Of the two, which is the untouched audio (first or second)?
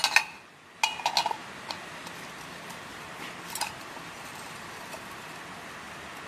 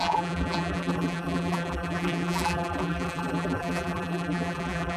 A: first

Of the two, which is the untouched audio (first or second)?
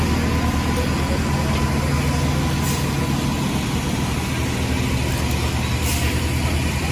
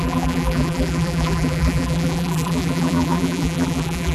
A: first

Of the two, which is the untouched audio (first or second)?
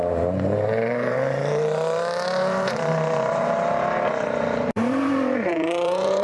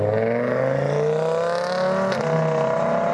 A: second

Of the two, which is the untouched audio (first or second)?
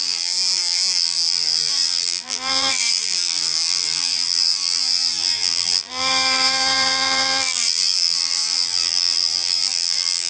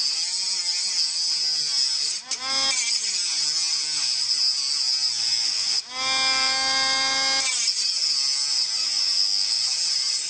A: second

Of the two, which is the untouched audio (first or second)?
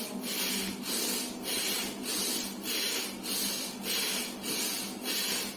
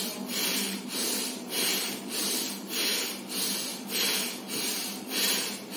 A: first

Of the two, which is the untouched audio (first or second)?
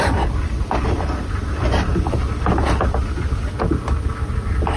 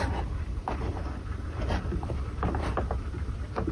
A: first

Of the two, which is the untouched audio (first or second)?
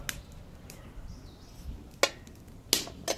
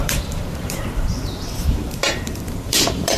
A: first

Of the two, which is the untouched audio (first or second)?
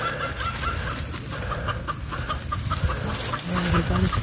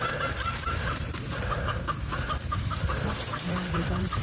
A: first